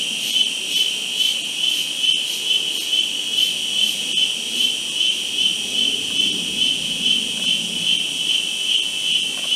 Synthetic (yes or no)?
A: no